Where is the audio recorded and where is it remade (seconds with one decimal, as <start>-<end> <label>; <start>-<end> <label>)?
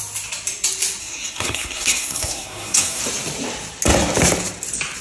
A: 0.0-1.0 recorded; 1.0-3.0 remade; 3.0-5.0 recorded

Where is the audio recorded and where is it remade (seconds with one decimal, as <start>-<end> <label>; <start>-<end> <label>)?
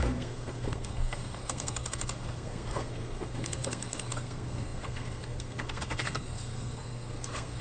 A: 0.0-7.6 remade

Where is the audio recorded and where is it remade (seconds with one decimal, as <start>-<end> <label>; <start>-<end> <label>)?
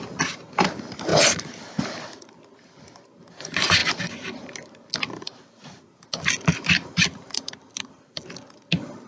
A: 0.0-9.1 recorded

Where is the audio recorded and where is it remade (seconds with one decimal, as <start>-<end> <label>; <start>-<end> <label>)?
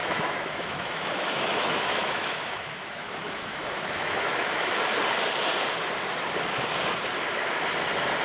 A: 0.0-4.8 remade; 4.8-8.2 recorded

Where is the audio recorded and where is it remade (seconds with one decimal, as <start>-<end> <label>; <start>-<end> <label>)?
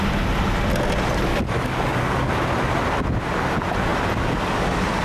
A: 0.0-1.3 recorded; 1.3-2.3 remade; 2.3-5.0 recorded